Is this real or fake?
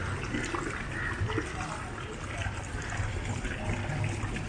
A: real